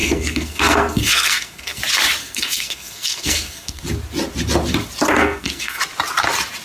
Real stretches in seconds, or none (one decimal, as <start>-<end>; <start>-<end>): 1.8-2.2; 3.8-5.1; 5.8-6.6